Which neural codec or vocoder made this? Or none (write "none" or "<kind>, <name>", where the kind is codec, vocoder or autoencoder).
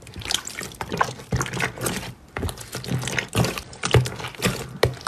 none